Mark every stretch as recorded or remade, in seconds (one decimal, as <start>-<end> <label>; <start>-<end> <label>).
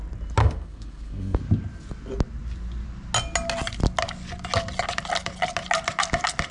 0.0-0.4 recorded; 0.4-1.4 remade; 1.4-6.5 recorded